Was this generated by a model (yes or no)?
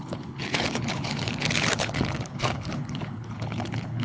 yes